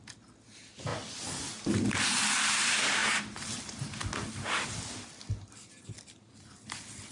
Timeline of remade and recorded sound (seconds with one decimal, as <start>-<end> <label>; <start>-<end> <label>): 0.0-7.1 recorded